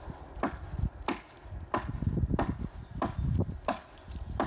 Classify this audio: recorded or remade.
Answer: recorded